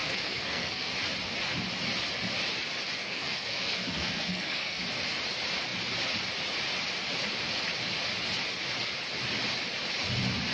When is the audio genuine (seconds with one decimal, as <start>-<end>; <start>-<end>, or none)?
0.9-3.0; 4.8-10.5